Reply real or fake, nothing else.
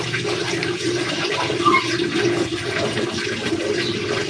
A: real